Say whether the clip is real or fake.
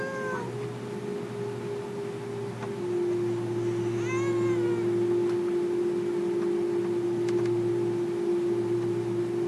real